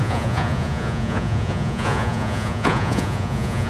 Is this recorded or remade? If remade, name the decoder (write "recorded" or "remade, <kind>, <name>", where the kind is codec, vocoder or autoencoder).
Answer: remade, vocoder, Vocos